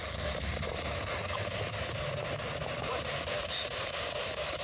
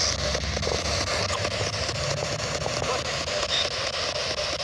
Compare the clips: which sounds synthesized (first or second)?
first